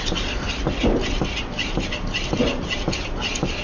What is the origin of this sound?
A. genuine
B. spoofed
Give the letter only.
A